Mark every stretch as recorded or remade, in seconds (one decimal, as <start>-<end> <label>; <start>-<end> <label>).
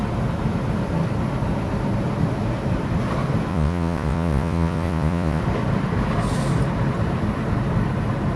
0.0-3.5 recorded; 3.5-5.4 remade; 5.4-8.4 recorded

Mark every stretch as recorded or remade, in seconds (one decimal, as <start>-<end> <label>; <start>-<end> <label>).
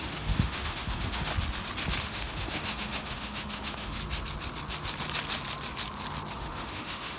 0.0-1.3 remade; 1.3-2.0 recorded; 2.0-4.0 remade; 4.0-6.3 recorded; 6.3-7.2 remade